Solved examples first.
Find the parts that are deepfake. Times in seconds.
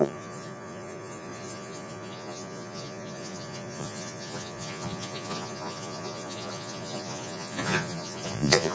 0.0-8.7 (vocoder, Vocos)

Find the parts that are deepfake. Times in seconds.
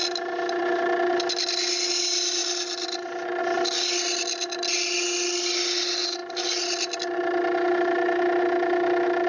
none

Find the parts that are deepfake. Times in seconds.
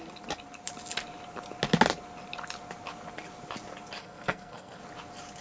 4.0-4.8 (codec, SNAC)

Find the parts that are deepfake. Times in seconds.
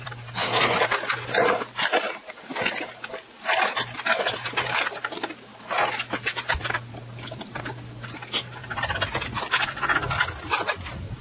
0.0-8.6 (vocoder, BigVGAN v2)